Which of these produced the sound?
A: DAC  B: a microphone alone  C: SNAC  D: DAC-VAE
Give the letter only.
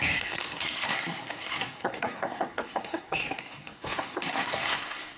C